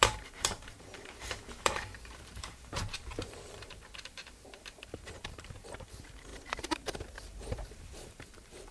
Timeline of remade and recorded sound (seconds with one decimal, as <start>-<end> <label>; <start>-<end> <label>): 0.0-8.7 remade

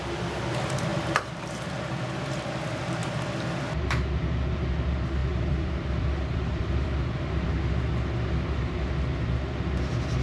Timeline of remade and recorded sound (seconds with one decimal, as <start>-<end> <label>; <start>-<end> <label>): 0.0-0.9 recorded; 0.9-1.7 remade; 1.7-3.0 recorded; 3.0-3.5 remade; 3.5-5.2 recorded; 5.2-7.5 remade; 7.5-10.2 recorded